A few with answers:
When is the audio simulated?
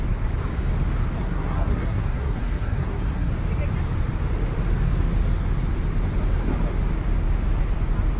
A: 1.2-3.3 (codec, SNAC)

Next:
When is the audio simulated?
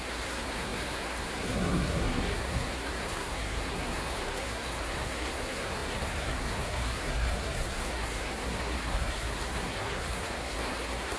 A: 0.0-11.2 (codec, SNAC)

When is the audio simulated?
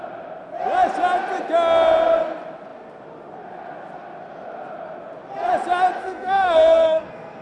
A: 6.0-7.4 (codec, SNAC)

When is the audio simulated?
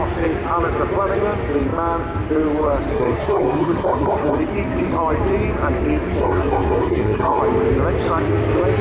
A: 2.9-4.4 (codec, SNAC); 6.2-7.4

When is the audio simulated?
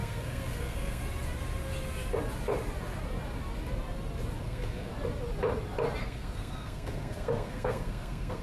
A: 0.0-1.0 (codec, SNAC); 4.4-4.9; 6.0-8.4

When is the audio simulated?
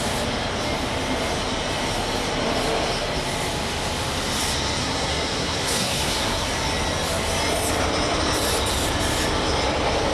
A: 4.8-6.5 (codec, SNAC)